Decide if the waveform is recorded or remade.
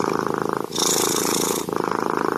remade